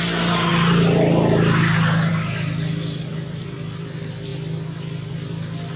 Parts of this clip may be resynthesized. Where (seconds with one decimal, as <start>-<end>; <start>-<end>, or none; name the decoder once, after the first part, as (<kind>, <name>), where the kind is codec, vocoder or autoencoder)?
none